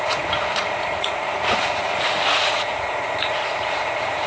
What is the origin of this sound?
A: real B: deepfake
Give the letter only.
B